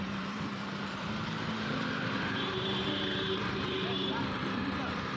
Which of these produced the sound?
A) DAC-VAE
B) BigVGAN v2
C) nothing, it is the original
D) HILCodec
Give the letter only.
B